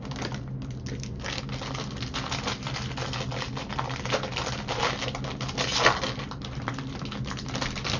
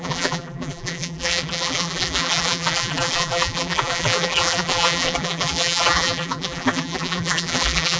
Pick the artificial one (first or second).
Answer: second